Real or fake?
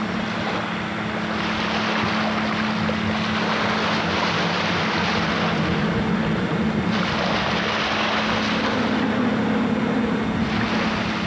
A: real